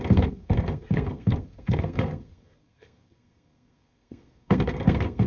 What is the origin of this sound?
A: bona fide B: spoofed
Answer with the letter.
B